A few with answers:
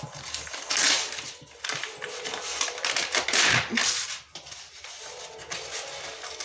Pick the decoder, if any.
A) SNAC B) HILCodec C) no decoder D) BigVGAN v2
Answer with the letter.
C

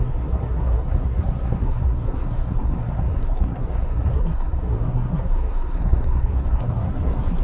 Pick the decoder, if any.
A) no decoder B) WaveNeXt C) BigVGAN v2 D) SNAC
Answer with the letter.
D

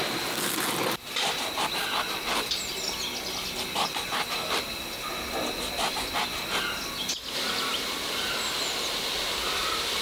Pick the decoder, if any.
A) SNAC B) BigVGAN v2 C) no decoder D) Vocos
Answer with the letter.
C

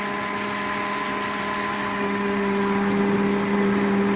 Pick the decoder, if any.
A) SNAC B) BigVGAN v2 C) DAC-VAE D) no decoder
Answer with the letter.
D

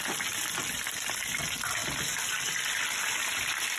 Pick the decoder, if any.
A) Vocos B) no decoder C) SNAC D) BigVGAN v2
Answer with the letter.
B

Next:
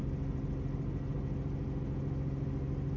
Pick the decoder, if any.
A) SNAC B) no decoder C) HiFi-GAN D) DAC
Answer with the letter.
B